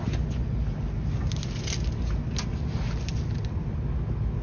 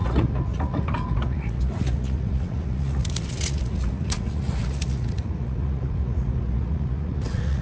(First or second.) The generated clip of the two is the second